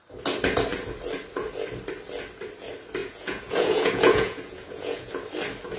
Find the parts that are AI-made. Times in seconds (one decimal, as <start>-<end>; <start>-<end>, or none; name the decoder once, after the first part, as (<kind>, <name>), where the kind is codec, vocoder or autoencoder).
3.0-5.1 (vocoder, Vocos)